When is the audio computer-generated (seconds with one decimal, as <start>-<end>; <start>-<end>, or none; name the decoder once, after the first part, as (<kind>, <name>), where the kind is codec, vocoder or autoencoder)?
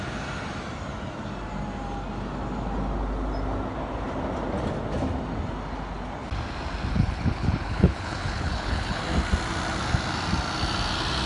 6.9-9.0 (codec, HILCodec)